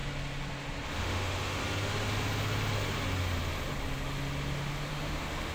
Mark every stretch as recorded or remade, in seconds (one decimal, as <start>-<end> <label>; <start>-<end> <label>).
0.0-1.0 recorded; 1.0-1.6 remade; 1.6-4.9 recorded; 4.9-5.5 remade